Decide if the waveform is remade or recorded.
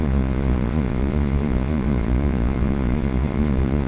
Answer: remade